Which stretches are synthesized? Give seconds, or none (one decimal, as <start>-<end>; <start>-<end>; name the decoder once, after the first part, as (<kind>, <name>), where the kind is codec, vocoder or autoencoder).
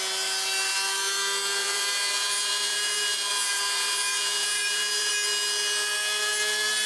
1.6-5.1 (vocoder, Vocos)